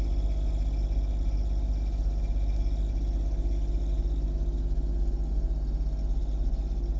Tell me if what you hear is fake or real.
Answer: real